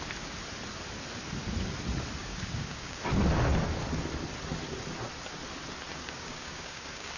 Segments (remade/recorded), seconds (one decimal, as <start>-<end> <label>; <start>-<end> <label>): 0.0-2.2 recorded; 2.2-3.0 remade; 3.0-5.9 recorded; 5.9-7.2 remade